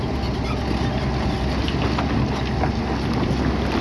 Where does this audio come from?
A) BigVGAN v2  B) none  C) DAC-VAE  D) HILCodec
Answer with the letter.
B